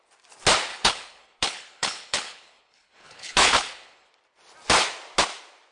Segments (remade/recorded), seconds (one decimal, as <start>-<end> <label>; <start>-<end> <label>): 0.0-0.7 recorded; 0.7-4.1 remade; 4.1-5.7 recorded